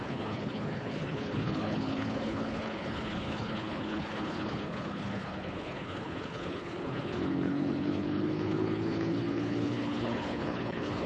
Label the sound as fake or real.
fake